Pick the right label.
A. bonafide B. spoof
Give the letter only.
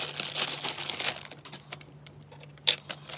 A